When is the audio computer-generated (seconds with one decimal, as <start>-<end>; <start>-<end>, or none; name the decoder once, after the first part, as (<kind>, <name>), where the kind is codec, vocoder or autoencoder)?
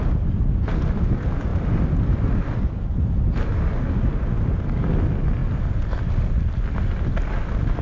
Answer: none